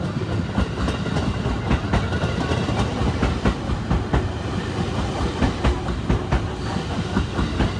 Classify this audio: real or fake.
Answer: real